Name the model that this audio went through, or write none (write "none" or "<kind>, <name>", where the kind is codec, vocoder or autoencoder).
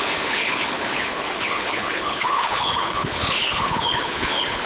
codec, HILCodec